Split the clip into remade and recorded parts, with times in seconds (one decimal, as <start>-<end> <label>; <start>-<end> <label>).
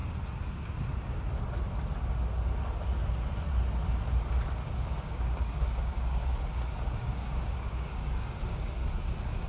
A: 0.0-4.6 recorded; 4.6-8.6 remade; 8.6-9.5 recorded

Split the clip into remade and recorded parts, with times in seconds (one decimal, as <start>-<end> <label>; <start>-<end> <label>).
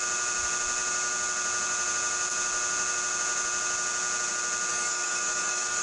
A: 0.0-4.7 recorded; 4.7-5.8 remade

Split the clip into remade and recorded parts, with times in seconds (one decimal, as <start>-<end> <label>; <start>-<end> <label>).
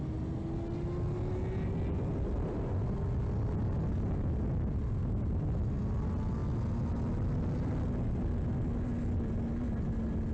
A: 0.0-10.3 recorded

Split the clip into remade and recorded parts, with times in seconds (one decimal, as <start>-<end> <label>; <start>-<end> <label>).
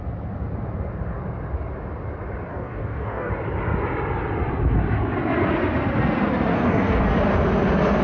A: 0.0-2.5 recorded; 2.5-3.3 remade; 3.3-6.5 recorded; 6.5-7.0 remade; 7.0-8.0 recorded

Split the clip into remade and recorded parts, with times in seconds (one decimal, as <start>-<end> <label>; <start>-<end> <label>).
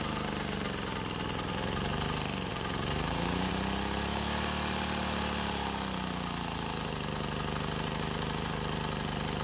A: 0.0-2.5 recorded; 2.5-3.5 remade; 3.5-9.4 recorded